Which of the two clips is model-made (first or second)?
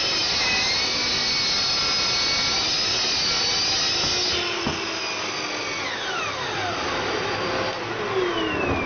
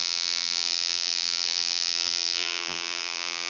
second